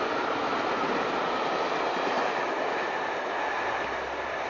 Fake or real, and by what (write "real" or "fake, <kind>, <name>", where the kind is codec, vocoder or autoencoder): real